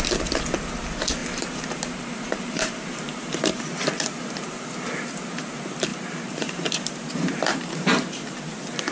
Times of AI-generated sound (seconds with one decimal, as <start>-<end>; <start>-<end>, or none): 1.2-3.6; 5.9-8.4